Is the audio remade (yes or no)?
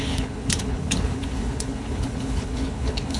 yes